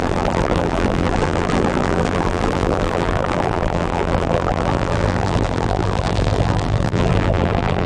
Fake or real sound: fake